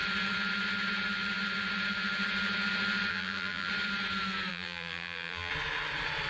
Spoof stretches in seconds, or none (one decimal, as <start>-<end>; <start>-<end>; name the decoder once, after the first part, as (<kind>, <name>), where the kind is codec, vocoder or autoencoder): 3.1-3.7 (vocoder, BigVGAN v2); 4.5-5.5